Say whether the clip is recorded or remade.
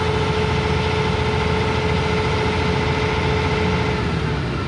recorded